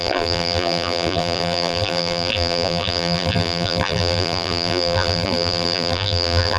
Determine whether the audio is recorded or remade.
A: remade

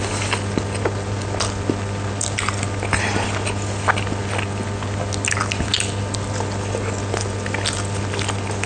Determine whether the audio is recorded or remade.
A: recorded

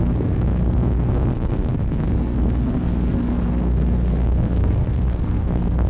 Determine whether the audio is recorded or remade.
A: remade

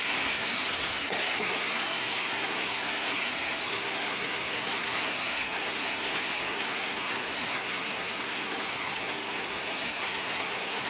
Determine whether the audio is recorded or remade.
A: remade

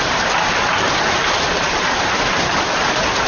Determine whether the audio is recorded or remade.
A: recorded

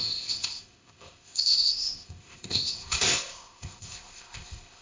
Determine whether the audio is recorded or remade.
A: remade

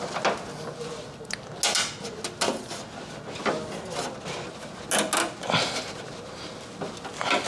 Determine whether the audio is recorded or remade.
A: recorded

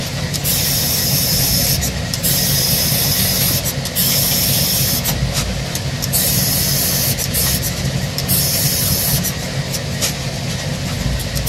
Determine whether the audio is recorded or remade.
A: recorded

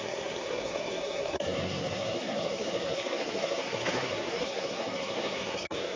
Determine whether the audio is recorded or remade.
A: remade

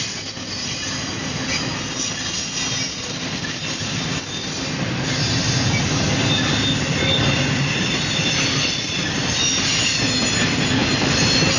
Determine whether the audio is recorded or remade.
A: recorded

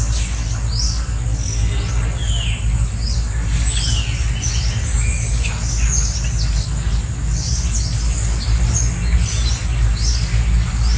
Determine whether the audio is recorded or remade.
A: recorded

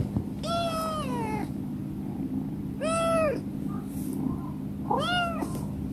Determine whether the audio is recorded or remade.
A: recorded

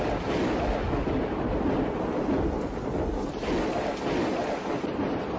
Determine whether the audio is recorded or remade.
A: recorded